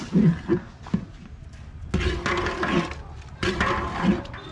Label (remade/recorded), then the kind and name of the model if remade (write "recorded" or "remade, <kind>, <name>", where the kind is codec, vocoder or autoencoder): recorded